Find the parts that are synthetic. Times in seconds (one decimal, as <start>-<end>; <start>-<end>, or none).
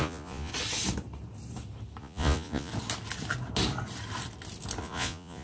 0.0-0.5; 2.0-2.7; 4.8-5.4